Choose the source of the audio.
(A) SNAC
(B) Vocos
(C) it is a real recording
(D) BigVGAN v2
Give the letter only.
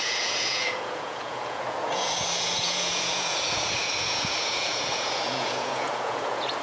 B